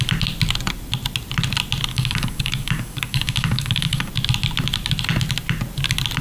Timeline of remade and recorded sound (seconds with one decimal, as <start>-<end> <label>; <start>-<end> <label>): 0.0-1.9 recorded; 1.9-4.1 remade; 4.1-6.2 recorded